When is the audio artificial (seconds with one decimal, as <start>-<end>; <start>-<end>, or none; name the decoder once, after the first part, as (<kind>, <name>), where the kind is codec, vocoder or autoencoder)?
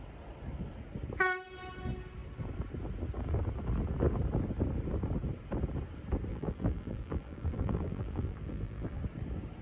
6.3-9.0 (vocoder, BigVGAN v2)